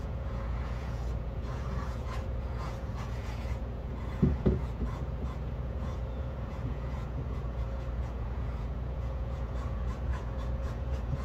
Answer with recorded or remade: remade